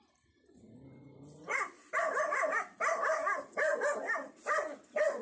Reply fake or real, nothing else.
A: real